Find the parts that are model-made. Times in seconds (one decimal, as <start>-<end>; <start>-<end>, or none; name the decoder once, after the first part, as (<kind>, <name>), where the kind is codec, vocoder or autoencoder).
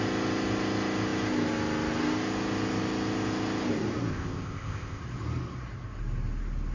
4.1-5.0 (codec, ZipCodec)